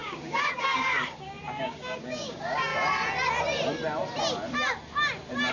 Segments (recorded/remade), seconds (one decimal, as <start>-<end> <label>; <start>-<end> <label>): 0.0-2.7 remade; 2.7-5.5 recorded